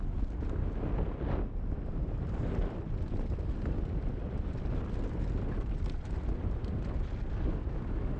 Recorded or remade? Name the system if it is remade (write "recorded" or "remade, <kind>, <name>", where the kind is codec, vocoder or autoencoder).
recorded